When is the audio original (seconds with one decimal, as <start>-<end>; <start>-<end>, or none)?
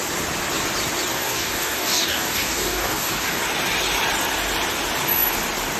0.0-1.1; 3.4-5.8